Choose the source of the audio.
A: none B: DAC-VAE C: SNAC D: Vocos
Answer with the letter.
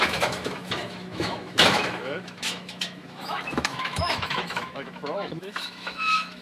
B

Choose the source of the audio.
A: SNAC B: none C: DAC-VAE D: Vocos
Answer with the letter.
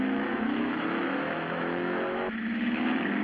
C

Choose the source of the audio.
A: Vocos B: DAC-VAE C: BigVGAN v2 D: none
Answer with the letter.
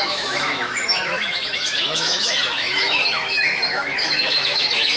B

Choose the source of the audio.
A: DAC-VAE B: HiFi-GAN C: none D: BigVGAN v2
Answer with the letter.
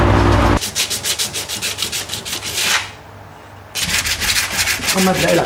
C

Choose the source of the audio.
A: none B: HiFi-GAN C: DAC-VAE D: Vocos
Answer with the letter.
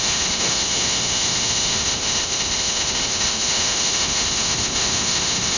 C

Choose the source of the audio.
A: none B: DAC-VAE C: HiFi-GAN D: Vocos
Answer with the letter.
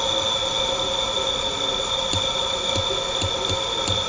A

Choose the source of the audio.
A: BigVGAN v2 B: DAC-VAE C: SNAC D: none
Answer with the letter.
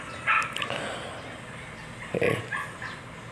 D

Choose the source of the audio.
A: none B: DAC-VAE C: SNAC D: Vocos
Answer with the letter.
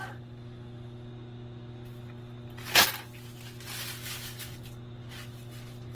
A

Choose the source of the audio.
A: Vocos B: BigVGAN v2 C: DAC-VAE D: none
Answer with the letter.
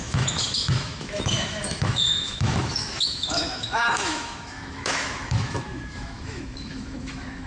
C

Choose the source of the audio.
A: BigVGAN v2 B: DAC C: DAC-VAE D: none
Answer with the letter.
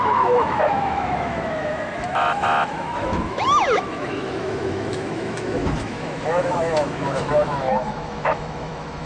C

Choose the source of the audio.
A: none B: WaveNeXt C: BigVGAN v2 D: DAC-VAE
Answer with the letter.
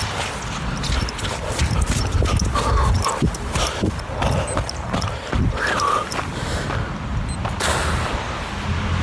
A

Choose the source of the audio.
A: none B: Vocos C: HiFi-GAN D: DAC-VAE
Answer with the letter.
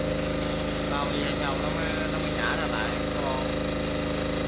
A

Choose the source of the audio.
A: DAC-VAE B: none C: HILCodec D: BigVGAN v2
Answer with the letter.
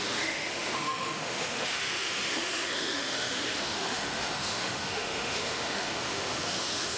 A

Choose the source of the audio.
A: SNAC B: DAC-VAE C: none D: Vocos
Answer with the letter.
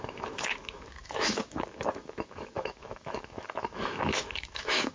B